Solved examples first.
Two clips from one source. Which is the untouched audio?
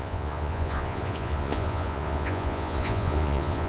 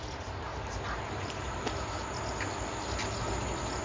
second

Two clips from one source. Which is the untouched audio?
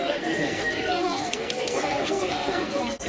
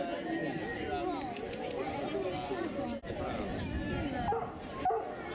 second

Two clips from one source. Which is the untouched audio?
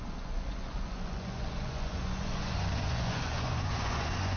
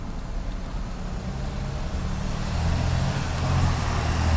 second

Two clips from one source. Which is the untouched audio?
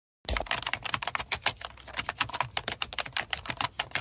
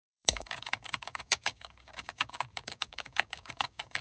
first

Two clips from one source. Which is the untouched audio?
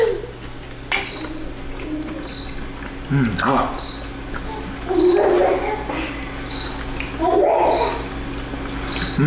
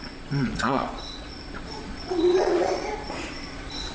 first